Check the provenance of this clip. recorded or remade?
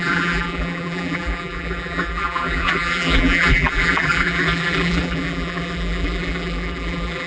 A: remade